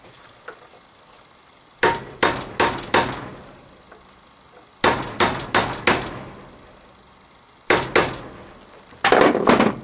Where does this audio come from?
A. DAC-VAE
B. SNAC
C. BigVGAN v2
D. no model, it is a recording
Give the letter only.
D